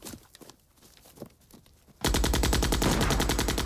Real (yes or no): yes